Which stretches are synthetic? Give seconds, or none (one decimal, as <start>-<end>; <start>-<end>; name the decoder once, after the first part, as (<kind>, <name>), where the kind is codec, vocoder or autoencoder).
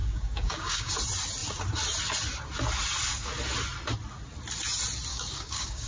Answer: 0.0-0.9 (codec, DAC); 5.1-5.9